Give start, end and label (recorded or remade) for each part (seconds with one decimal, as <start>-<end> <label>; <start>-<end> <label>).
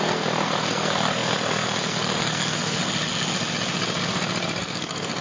0.0-2.8 remade; 2.8-4.6 recorded; 4.6-5.2 remade